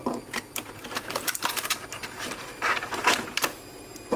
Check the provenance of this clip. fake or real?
fake